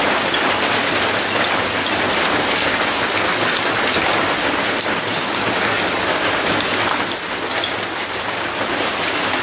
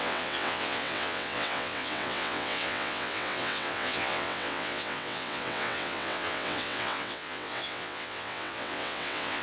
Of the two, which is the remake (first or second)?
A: second